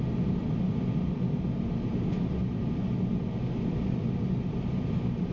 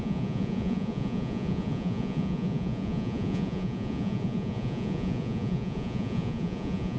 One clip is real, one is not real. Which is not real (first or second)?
second